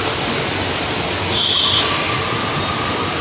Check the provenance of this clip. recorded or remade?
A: recorded